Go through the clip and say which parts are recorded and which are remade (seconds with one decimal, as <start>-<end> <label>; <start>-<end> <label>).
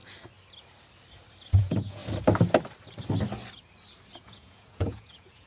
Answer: 0.0-1.6 recorded; 1.6-2.0 remade; 2.0-4.2 recorded; 4.2-5.5 remade